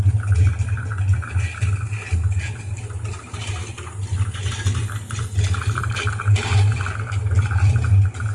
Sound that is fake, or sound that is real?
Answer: real